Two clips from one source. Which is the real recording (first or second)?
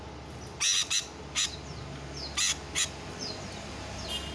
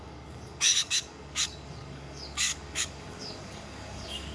first